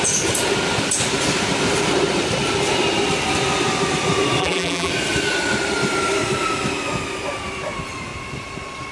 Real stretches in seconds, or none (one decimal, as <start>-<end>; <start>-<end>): 0.0-4.4; 4.9-8.9